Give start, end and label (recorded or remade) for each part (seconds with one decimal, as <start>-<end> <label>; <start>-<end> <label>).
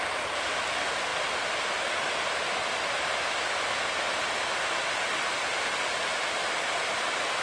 0.0-6.1 recorded; 6.1-6.7 remade; 6.7-7.4 recorded